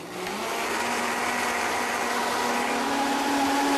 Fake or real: real